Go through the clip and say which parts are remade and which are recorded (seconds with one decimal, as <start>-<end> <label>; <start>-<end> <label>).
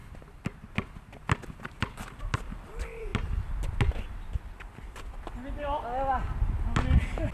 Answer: 0.0-7.3 recorded